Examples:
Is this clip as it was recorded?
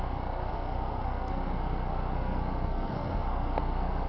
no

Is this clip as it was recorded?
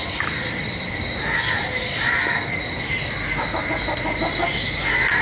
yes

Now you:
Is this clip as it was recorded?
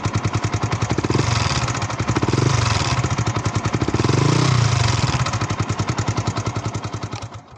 no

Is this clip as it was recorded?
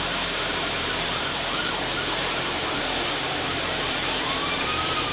no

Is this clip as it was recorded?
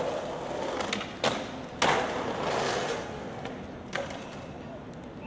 yes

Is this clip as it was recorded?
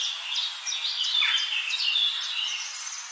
yes